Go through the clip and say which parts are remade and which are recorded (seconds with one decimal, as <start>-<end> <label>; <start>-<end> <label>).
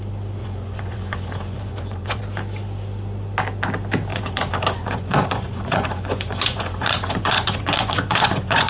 0.0-0.4 recorded; 0.4-2.2 remade; 2.2-4.1 recorded; 4.1-8.7 remade